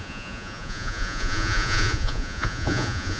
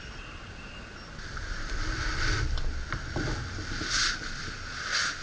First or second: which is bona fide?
second